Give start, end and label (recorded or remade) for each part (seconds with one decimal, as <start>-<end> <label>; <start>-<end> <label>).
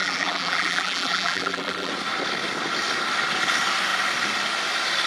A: 0.0-1.9 remade; 1.9-5.1 recorded